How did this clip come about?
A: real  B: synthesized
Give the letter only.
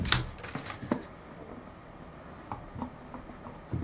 A